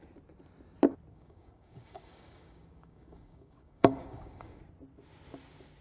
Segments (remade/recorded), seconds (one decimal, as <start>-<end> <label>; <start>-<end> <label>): 0.0-1.1 recorded; 1.1-4.6 remade; 4.6-5.8 recorded